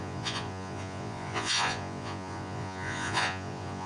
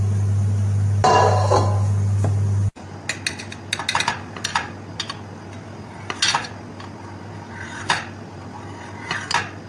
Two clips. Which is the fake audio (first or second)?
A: first